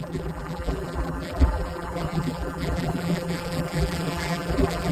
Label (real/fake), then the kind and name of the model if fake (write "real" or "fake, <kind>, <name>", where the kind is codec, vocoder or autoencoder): fake, vocoder, BigVGAN v2